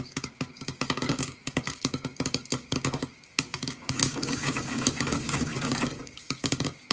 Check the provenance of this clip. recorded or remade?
remade